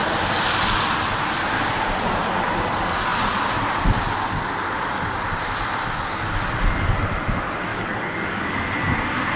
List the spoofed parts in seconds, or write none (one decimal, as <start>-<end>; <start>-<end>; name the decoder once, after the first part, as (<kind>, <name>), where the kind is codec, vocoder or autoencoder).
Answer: 7.7-8.6 (codec, DAC)